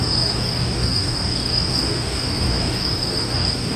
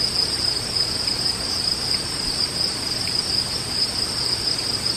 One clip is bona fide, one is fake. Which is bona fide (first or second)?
second